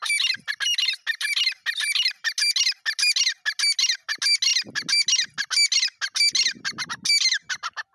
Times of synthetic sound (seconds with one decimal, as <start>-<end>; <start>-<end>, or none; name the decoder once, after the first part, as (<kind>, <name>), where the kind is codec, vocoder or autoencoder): none